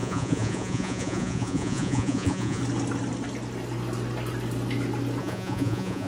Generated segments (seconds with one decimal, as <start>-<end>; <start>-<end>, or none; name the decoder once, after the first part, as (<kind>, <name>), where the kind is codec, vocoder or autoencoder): 0.0-2.6 (vocoder, Vocos); 5.2-6.1